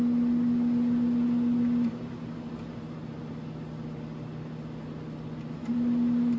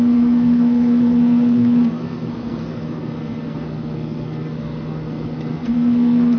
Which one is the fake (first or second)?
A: second